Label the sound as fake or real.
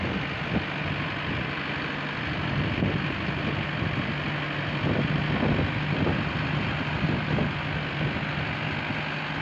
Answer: real